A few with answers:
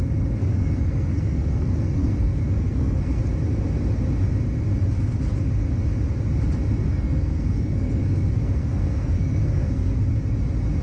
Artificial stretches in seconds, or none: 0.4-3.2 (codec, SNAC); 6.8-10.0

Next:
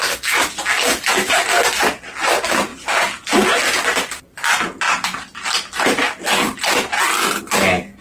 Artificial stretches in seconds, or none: none

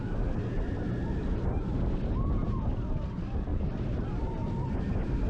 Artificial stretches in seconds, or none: 3.5-4.8 (vocoder, BigVGAN v2)

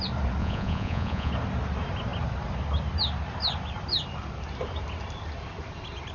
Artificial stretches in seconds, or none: 0.4-1.3 (vocoder, Vocos)

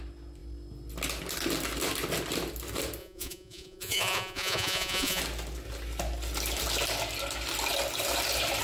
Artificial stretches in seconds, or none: 3.0-5.2 (vocoder, Vocos)